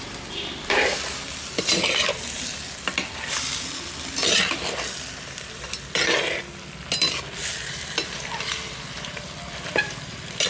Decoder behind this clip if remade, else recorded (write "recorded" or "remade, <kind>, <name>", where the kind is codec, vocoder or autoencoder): recorded